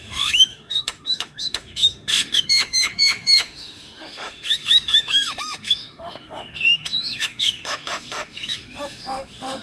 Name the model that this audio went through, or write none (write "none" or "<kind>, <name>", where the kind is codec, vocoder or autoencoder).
autoencoder, DAC-VAE